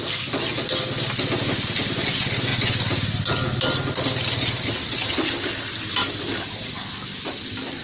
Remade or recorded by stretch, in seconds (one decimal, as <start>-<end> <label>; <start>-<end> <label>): 0.0-7.8 recorded